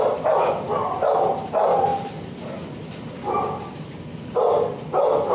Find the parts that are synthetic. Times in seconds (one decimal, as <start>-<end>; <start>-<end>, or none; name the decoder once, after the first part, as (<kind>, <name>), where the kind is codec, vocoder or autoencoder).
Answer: none